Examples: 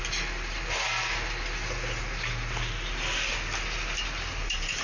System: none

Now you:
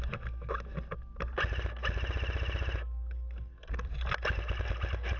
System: none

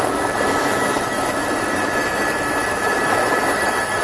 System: autoencoder, DAC-VAE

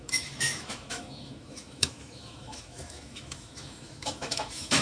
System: autoencoder, DAC-VAE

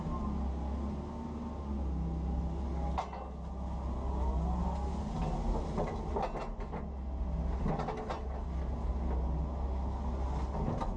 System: none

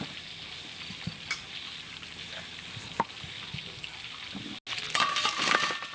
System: none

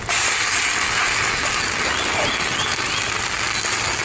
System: none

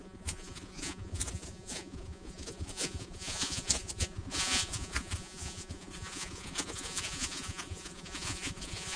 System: vocoder, Vocos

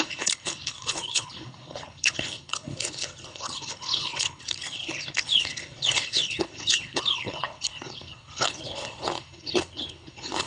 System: codec, HILCodec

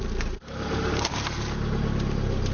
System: none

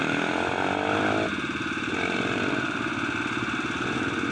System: none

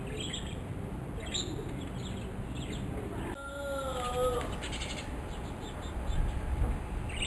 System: none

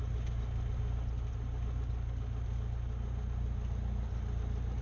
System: none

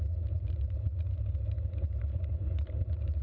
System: none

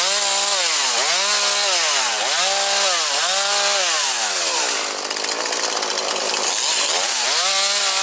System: none